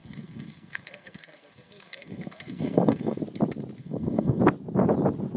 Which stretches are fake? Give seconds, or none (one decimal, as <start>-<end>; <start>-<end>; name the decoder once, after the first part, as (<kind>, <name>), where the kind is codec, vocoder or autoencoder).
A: 0.0-3.2 (codec, SNAC); 3.8-4.4